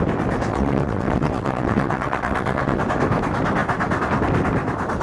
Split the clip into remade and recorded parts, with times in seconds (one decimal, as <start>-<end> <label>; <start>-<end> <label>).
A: 0.0-0.5 recorded; 0.5-2.8 remade; 2.8-5.0 recorded